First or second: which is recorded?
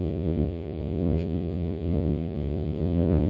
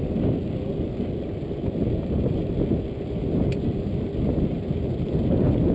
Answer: second